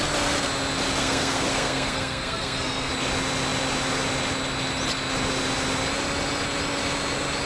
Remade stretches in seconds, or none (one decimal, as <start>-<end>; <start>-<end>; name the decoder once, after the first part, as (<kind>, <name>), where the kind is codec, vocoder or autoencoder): 1.0-2.9 (codec, SNAC)